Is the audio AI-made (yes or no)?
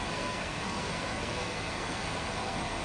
yes